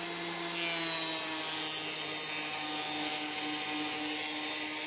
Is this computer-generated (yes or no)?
no